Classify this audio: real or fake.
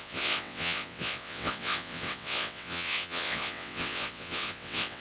fake